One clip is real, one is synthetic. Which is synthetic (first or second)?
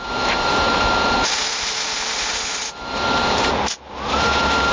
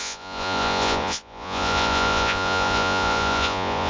second